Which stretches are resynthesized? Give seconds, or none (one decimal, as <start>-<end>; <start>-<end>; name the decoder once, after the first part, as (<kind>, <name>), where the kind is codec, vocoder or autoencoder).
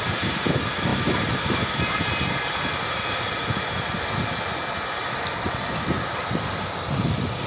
none